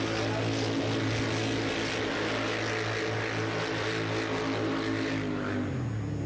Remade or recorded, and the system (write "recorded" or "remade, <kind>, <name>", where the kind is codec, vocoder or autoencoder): recorded